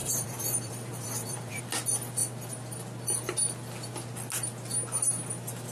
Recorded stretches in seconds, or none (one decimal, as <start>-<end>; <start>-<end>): 1.6-5.7